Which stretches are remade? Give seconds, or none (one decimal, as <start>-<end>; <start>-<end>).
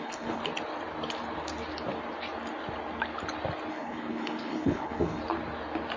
0.0-0.4; 3.7-5.2